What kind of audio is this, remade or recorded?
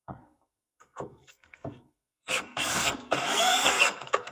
remade